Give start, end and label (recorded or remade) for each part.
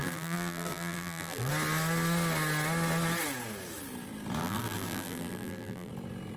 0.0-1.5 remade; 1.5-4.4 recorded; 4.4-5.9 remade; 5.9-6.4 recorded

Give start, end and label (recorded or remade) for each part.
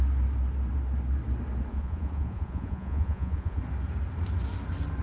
0.0-1.7 recorded; 1.7-3.6 remade; 3.6-5.0 recorded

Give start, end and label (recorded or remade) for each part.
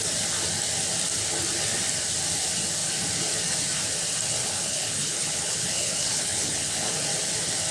0.0-4.4 recorded; 4.4-6.9 remade; 6.9-7.7 recorded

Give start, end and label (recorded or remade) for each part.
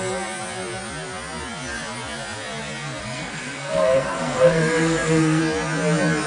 0.0-3.0 recorded; 3.0-5.4 remade; 5.4-6.3 recorded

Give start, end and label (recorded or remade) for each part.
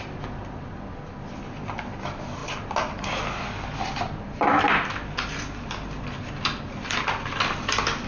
0.0-8.1 recorded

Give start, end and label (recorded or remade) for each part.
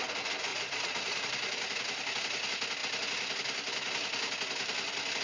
0.0-0.5 recorded; 0.5-1.2 remade; 1.2-5.2 recorded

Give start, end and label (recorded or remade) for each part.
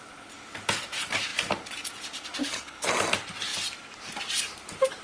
0.0-2.4 recorded; 2.4-2.9 remade; 2.9-5.0 recorded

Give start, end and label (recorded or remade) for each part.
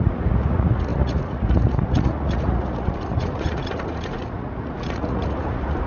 0.0-5.9 remade